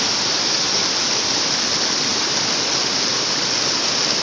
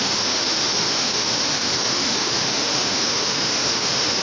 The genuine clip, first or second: first